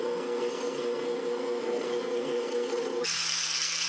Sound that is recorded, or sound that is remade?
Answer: remade